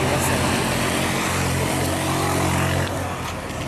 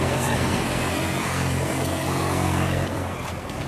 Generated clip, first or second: second